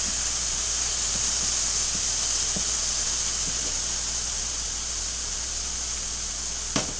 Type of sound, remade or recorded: recorded